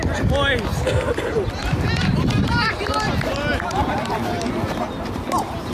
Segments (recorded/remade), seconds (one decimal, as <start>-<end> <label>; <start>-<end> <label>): 0.0-1.6 recorded; 1.6-2.7 remade; 2.7-5.7 recorded